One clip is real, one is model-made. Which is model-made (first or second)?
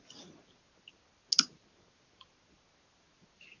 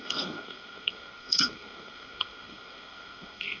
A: second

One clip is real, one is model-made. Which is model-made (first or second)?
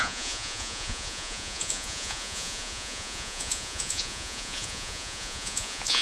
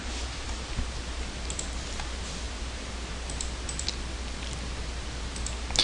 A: first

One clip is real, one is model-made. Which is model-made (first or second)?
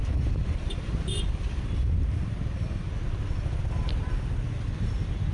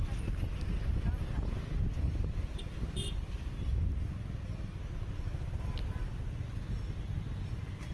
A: first